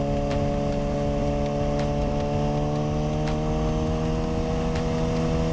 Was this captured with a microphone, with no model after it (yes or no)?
yes